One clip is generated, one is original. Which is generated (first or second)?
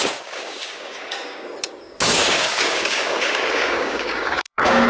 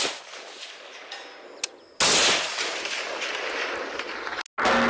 first